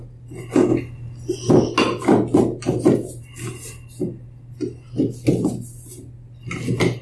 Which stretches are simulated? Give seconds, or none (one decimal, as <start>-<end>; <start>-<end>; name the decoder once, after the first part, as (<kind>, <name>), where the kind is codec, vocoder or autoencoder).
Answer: none